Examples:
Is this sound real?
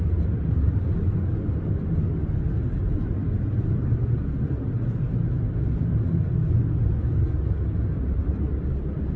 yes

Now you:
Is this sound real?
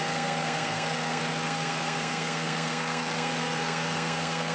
no